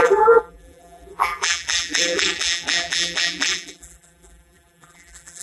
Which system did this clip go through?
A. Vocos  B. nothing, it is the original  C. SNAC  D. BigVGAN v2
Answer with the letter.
D